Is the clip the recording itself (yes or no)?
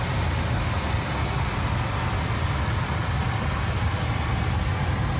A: yes